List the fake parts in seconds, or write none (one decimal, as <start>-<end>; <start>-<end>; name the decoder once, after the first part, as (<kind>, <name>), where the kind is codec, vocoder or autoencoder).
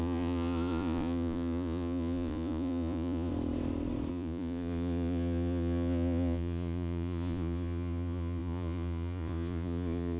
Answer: 0.0-3.3 (vocoder, Vocos); 4.1-10.2